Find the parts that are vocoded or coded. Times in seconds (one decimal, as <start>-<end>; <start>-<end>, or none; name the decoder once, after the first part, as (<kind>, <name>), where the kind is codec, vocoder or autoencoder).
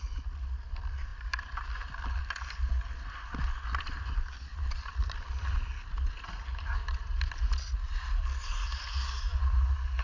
none